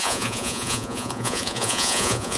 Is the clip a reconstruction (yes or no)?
yes